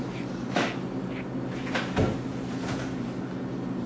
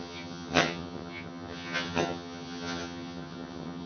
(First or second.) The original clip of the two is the first